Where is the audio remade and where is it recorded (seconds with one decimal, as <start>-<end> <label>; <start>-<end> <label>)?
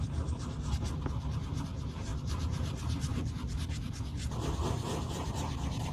0.0-5.9 recorded